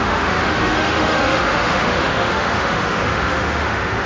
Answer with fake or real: fake